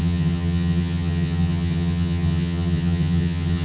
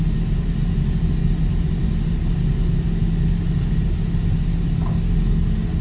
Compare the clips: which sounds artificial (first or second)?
first